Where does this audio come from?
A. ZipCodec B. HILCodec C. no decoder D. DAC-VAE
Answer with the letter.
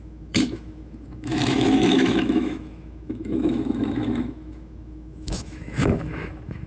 D